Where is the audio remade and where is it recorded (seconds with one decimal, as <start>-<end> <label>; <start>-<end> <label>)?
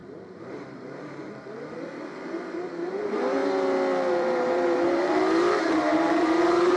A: 0.0-3.4 remade; 3.4-4.1 recorded; 4.1-6.8 remade